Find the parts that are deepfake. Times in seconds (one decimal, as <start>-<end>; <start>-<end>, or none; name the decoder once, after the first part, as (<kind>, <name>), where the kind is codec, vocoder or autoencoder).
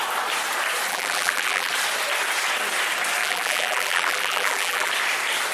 0.9-1.7 (vocoder, BigVGAN v2); 3.2-4.9